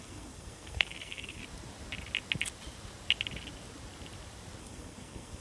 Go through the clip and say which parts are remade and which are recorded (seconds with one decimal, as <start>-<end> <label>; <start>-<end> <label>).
0.0-1.4 remade; 1.4-4.6 recorded; 4.6-5.4 remade